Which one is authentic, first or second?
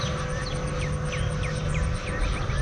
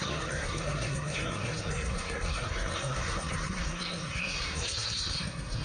first